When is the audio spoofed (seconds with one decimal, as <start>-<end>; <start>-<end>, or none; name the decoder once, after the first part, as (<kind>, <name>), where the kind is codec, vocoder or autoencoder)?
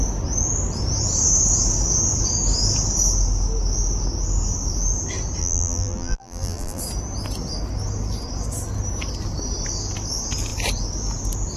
5.4-6.8 (vocoder, BigVGAN v2)